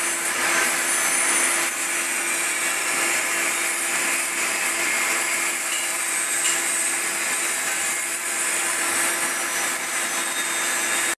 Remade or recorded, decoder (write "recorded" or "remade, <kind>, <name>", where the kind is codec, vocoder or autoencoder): recorded